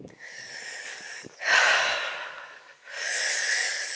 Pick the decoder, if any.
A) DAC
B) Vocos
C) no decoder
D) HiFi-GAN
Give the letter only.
A